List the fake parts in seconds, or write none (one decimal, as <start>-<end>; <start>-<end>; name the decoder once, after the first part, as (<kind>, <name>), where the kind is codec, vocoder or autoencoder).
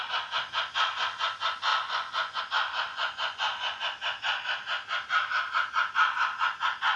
1.7-2.4 (vocoder, Vocos); 2.9-3.8